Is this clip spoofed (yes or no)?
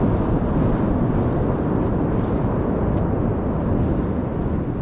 no